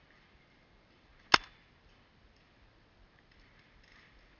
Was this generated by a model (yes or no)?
no